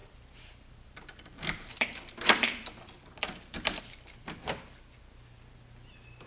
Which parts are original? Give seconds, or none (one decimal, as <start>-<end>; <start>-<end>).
3.8-6.3